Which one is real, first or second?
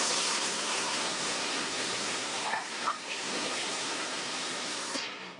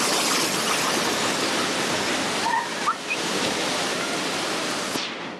second